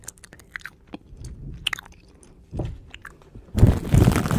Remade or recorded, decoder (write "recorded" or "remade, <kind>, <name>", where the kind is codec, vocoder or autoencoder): remade, vocoder, BigVGAN v2